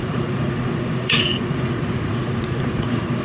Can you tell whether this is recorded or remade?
remade